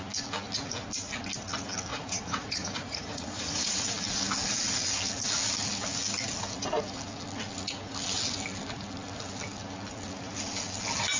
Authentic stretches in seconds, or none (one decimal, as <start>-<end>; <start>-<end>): 0.0-1.9; 3.8-11.2

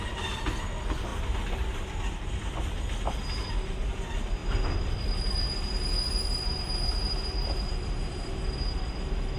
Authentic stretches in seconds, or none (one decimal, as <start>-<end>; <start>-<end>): 0.0-9.4

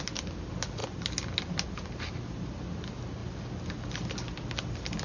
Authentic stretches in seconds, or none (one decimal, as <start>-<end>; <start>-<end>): 0.0-5.0

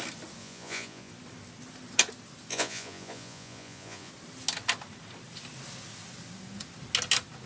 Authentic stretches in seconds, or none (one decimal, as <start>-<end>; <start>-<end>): 0.0-0.4; 1.1-2.5; 4.1-7.5

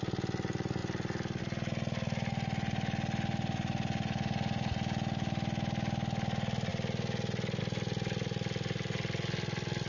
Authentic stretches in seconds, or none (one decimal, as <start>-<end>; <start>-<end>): 0.0-9.9